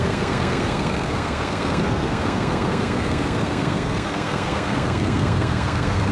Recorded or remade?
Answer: remade